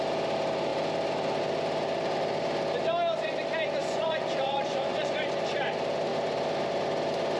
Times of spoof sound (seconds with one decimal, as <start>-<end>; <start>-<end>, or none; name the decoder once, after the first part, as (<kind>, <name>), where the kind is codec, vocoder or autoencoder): 3.8-5.3 (vocoder, Vocos)